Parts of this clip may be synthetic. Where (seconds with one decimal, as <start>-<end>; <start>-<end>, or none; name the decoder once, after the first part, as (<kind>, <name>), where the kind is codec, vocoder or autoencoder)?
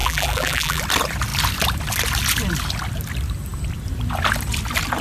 0.0-0.8 (vocoder, BigVGAN v2)